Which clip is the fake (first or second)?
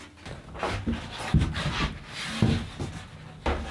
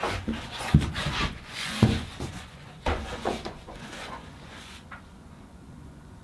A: second